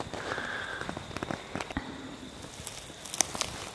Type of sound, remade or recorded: recorded